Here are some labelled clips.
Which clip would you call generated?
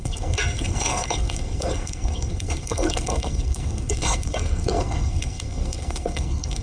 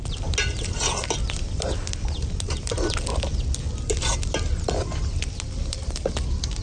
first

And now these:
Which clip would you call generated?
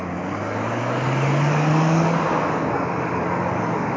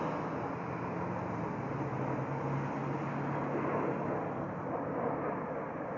first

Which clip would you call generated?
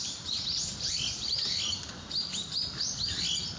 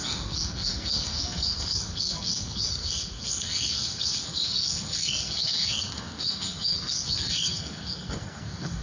second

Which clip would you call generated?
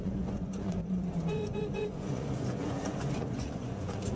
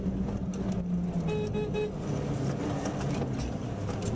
first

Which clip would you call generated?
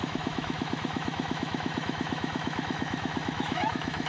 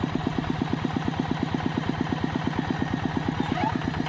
first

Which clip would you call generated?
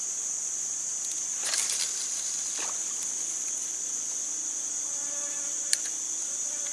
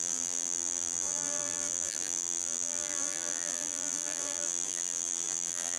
second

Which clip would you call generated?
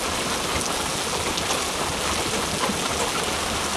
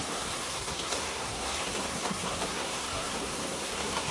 second